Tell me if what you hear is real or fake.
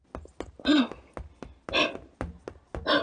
real